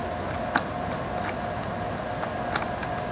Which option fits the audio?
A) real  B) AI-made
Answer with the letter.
A